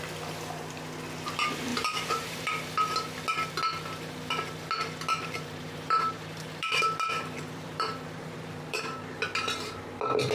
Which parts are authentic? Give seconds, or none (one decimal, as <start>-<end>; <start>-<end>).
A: 0.0-1.7; 2.5-5.1; 9.2-10.3